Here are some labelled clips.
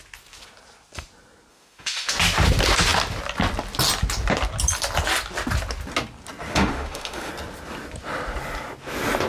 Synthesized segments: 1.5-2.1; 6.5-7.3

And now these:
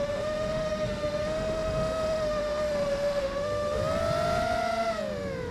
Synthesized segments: 0.0-3.8